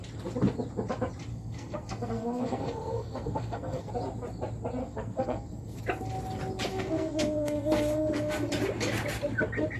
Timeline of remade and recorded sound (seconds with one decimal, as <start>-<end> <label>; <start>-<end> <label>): 0.0-1.3 recorded; 1.3-3.9 remade; 3.9-4.8 recorded; 4.8-5.8 remade; 5.8-6.7 recorded; 6.7-8.5 remade; 8.5-9.8 recorded